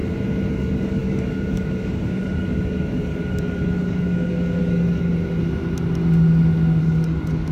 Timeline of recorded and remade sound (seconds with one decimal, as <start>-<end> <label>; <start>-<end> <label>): 0.0-0.5 recorded; 0.5-5.1 remade; 5.1-6.8 recorded; 6.8-7.5 remade